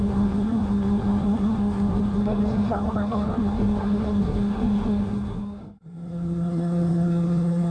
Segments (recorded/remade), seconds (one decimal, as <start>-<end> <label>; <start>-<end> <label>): 0.0-7.7 remade